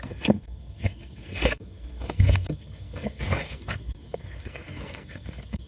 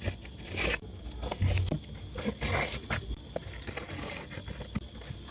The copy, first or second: first